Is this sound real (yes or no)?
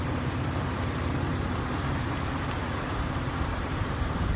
yes